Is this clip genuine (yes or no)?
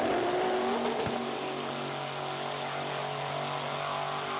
yes